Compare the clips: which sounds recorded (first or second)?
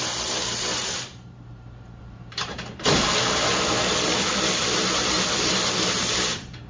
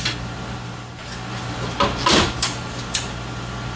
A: second